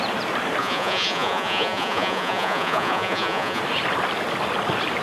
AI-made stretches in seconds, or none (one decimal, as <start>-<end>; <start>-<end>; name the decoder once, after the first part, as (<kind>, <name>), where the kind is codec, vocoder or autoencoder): 0.6-3.6 (vocoder, Vocos)